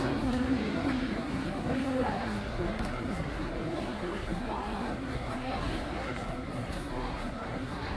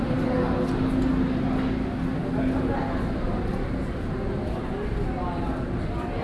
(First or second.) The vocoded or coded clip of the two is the first